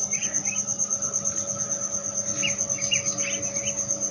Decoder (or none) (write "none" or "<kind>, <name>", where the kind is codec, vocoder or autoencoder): none